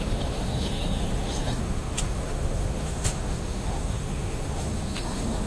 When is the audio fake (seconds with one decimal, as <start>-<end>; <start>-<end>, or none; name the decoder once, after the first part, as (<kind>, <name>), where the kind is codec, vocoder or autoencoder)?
0.0-5.5 (autoencoder, DAC-VAE)